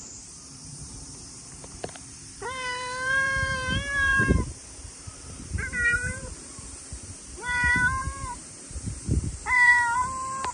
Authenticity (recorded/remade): remade